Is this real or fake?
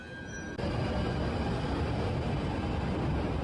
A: real